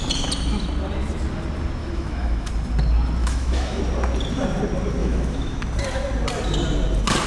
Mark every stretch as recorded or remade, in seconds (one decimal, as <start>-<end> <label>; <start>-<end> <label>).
0.0-1.8 recorded; 1.8-2.5 remade; 2.5-3.2 recorded; 3.2-3.8 remade; 3.8-5.0 recorded; 5.0-5.6 remade; 5.6-7.3 recorded